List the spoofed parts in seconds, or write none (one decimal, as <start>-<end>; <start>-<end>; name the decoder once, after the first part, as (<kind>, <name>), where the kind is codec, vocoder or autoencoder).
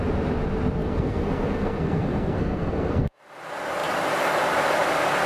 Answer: 0.8-3.2 (codec, SNAC)